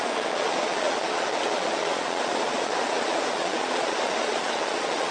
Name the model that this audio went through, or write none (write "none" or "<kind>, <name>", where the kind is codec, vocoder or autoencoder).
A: vocoder, Vocos